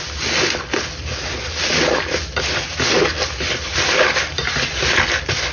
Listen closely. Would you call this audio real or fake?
real